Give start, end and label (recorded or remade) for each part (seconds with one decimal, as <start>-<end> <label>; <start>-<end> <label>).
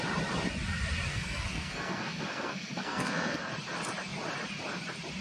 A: 0.0-1.1 recorded; 1.1-3.5 remade; 3.5-5.2 recorded